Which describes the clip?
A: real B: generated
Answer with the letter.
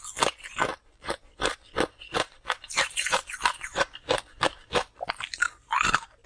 B